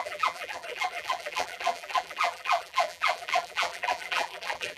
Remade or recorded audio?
remade